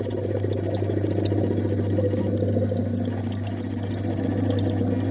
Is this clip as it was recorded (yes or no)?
yes